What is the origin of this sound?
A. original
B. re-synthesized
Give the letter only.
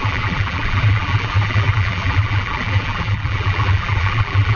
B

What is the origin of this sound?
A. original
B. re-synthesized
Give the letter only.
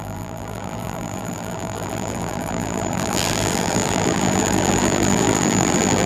B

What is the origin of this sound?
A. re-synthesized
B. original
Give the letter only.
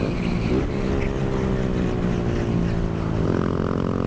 B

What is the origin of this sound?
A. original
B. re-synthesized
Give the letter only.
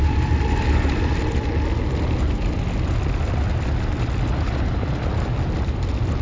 B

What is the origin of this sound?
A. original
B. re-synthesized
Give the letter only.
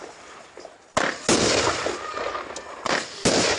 A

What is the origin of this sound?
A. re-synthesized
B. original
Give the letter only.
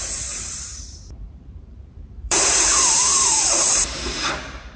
A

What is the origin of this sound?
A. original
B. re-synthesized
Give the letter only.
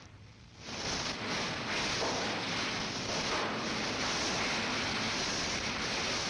A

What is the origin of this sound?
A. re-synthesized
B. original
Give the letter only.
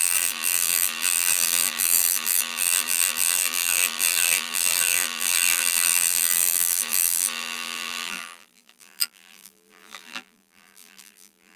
A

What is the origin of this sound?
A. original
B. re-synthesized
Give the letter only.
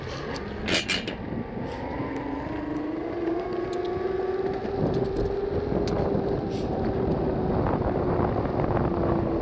A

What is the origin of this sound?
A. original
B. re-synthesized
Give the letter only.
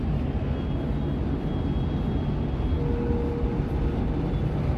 A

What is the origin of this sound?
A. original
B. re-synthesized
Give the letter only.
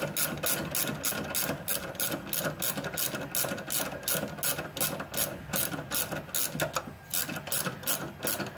A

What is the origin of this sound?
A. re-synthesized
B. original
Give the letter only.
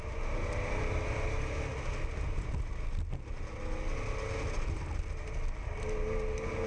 B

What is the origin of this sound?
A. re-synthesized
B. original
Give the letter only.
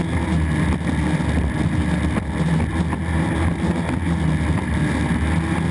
B